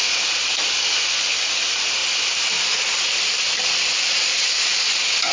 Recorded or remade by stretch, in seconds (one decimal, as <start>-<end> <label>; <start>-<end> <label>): 0.0-5.3 recorded

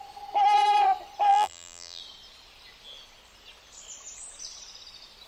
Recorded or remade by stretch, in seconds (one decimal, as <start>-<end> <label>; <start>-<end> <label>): 0.0-1.3 recorded; 1.3-2.0 remade; 2.0-5.3 recorded

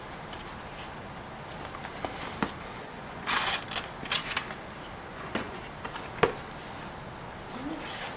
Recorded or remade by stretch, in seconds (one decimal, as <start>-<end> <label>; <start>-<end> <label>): 0.0-2.8 recorded; 2.8-3.6 remade; 3.6-5.1 recorded; 5.1-5.6 remade; 5.6-8.2 recorded

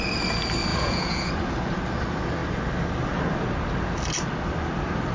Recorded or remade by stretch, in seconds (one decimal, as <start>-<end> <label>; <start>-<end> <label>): 0.0-0.7 recorded; 0.7-1.3 remade; 1.3-5.1 recorded